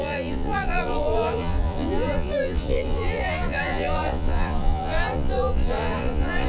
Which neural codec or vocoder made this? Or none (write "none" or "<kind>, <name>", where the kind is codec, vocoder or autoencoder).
vocoder, Vocos